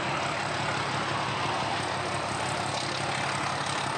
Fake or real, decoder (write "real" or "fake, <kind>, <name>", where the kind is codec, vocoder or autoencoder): real